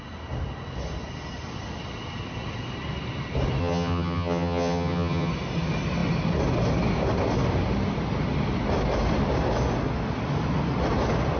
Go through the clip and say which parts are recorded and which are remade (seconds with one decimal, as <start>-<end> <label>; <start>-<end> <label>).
0.0-3.6 recorded; 3.6-5.3 remade; 5.3-11.4 recorded